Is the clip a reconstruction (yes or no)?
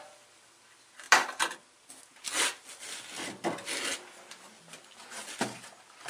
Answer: no